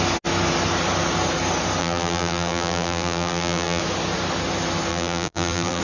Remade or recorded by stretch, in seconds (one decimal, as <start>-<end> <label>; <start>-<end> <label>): 0.0-1.8 recorded; 1.8-3.8 remade; 3.8-4.9 recorded; 4.9-5.8 remade